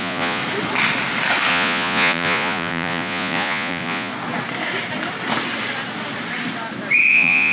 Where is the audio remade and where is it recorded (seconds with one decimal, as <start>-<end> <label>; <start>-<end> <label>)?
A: 0.0-0.4 remade; 0.4-1.5 recorded; 1.5-4.1 remade; 4.1-7.1 recorded; 7.1-7.5 remade